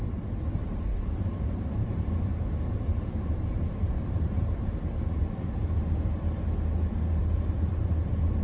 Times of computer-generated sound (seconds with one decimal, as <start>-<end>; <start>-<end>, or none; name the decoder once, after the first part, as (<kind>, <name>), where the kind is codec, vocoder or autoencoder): 0.9-5.2 (vocoder, BigVGAN v2)